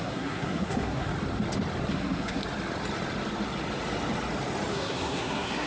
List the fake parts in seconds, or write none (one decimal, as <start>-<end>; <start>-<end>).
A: 0.0-1.1; 1.9-2.4; 4.7-5.7